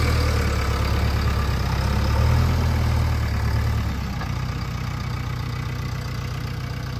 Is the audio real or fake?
real